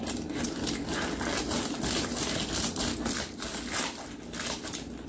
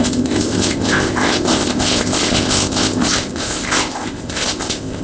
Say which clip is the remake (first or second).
second